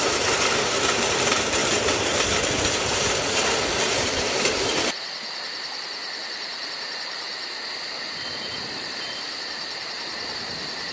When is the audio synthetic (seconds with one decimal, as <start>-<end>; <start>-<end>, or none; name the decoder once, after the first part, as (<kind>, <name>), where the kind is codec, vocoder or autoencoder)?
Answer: 0.0-1.6 (vocoder, BigVGAN v2); 2.7-10.9